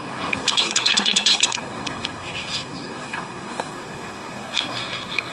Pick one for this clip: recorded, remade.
remade